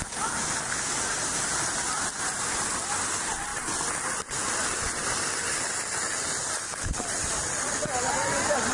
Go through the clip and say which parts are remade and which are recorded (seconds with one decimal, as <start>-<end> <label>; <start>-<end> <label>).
0.0-8.7 recorded